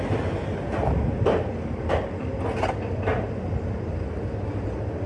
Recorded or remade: recorded